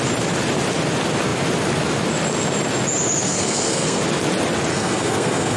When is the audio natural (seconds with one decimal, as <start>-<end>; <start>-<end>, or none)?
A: 0.0-3.3; 4.0-4.7

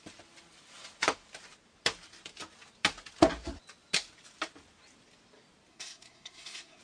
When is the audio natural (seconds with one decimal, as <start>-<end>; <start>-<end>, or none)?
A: 0.0-5.7

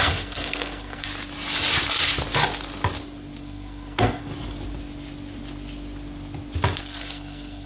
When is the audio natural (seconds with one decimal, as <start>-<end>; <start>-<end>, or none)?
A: 1.1-3.4; 4.3-6.8

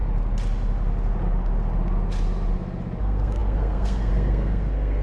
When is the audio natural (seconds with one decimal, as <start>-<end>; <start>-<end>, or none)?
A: 0.0-3.0

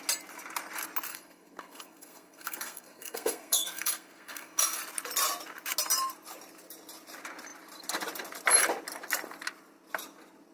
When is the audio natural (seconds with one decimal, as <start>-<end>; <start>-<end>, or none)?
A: 0.0-1.1; 4.8-10.5